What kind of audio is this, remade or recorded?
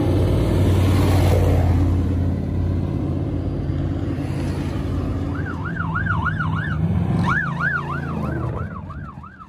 recorded